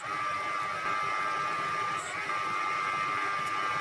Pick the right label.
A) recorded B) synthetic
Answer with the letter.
A